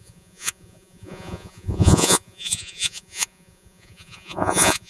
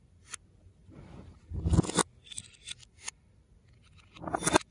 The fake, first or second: first